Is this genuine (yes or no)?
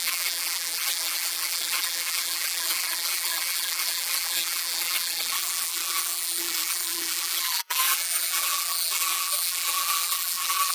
no